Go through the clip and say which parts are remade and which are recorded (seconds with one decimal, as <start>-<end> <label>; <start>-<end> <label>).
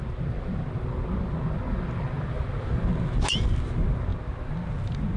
0.0-5.2 recorded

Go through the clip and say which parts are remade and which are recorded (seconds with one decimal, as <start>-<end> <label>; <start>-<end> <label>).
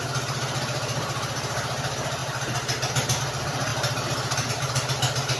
0.0-5.4 remade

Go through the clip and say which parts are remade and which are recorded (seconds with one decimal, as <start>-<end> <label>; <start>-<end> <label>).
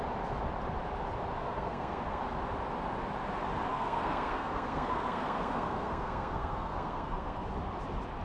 0.0-1.4 recorded; 1.4-2.2 remade; 2.2-3.7 recorded; 3.7-7.5 remade; 7.5-8.2 recorded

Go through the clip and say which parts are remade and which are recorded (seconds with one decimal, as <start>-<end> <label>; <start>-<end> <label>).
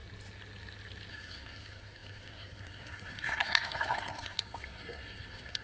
0.0-1.1 recorded; 1.1-5.6 remade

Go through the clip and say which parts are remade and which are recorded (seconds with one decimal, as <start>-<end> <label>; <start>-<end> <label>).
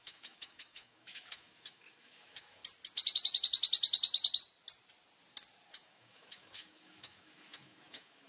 0.0-2.6 remade; 2.6-5.7 recorded; 5.7-8.3 remade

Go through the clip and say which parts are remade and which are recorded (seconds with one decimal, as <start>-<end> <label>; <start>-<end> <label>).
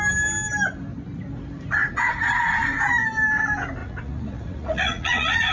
0.0-1.8 recorded; 1.8-2.8 remade; 2.8-3.8 recorded; 3.8-5.5 remade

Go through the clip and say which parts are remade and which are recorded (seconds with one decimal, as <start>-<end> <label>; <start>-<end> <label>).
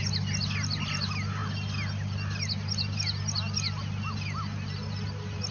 0.0-5.5 recorded